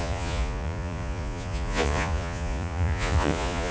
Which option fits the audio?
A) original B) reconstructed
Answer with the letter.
B